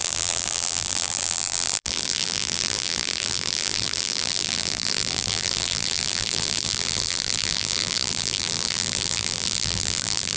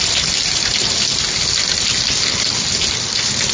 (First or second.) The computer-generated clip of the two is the first